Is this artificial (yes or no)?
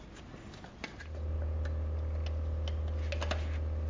no